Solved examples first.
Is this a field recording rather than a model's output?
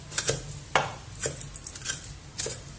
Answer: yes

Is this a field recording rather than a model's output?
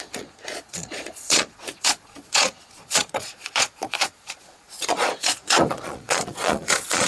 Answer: no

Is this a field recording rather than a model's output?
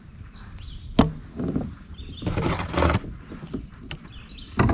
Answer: yes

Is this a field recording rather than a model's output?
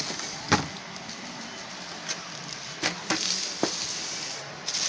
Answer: yes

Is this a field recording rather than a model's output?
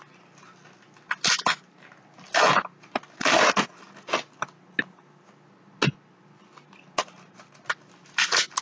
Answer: yes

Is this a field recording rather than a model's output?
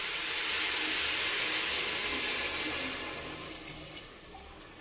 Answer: yes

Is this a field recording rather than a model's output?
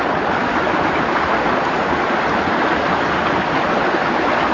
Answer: yes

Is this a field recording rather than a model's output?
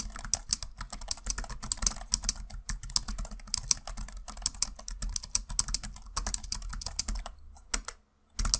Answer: yes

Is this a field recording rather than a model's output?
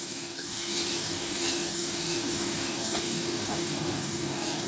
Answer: no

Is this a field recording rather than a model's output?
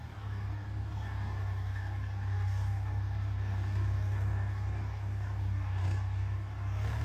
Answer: no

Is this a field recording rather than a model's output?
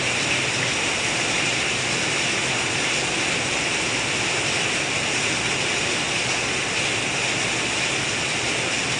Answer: yes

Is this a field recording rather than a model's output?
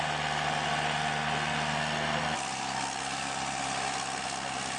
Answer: yes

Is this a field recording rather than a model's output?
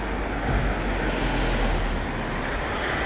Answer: yes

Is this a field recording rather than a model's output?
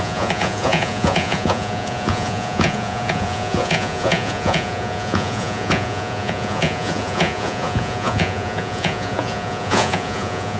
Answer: no